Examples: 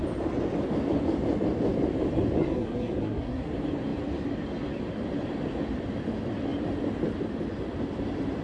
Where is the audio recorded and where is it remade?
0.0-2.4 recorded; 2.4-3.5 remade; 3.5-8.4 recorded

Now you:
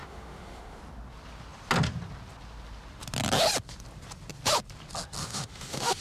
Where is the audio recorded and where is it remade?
0.0-0.8 remade; 0.8-5.2 recorded; 5.2-6.0 remade

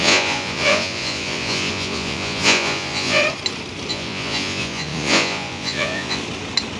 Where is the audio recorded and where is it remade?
0.0-3.2 remade; 3.2-3.9 recorded; 3.9-6.2 remade; 6.2-6.8 recorded

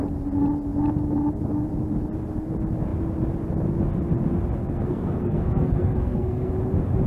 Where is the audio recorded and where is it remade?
0.0-4.6 recorded; 4.6-6.5 remade; 6.5-7.1 recorded

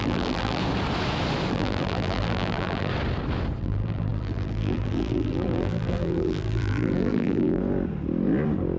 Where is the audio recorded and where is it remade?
0.0-0.6 remade; 0.6-1.5 recorded; 1.5-2.9 remade; 2.9-3.6 recorded; 3.6-7.6 remade; 7.6-8.8 recorded

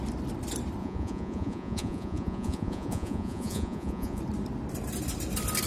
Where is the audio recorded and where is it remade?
0.0-0.8 recorded; 0.8-4.2 remade; 4.2-5.7 recorded

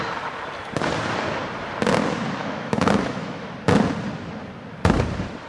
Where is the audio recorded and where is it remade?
0.0-2.4 recorded; 2.4-3.5 remade; 3.5-5.5 recorded

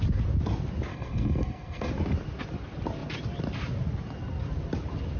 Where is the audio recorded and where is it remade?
0.0-0.9 recorded; 0.9-1.9 remade; 1.9-5.2 recorded